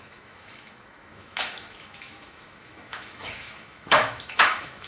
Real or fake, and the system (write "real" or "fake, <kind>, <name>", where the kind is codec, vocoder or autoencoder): fake, autoencoder, DAC-VAE